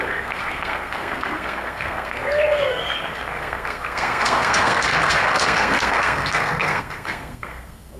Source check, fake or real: fake